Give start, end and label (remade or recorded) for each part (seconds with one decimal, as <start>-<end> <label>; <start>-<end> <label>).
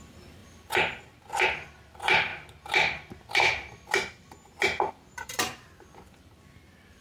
0.0-2.3 remade; 2.3-4.9 recorded; 4.9-7.0 remade